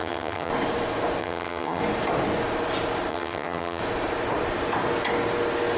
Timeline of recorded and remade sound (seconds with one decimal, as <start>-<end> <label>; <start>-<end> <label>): 0.0-0.5 remade; 0.5-1.2 recorded; 1.2-1.8 remade; 1.8-3.1 recorded; 3.1-3.8 remade; 3.8-5.8 recorded

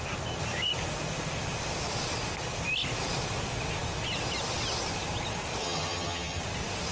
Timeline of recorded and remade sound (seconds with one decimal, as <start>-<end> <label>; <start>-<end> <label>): 0.0-5.6 recorded; 5.6-6.4 remade; 6.4-6.9 recorded

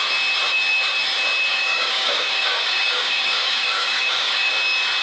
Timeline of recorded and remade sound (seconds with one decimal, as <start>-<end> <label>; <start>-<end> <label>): 0.0-1.5 recorded; 1.5-4.5 remade; 4.5-5.0 recorded

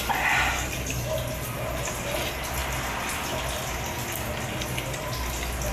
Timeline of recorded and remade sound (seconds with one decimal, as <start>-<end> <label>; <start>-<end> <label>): 0.0-5.7 recorded